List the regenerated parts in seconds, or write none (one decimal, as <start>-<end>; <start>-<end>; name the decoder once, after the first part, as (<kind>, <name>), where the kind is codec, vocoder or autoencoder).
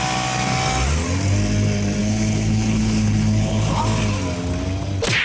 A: 2.0-3.8 (codec, HILCodec)